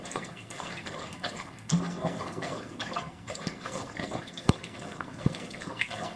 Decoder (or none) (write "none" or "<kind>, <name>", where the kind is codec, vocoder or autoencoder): codec, SNAC